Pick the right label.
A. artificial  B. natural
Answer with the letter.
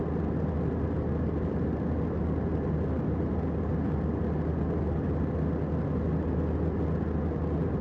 B